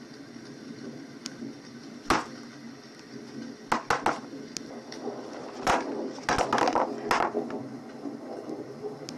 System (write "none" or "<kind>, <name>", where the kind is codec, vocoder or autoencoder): none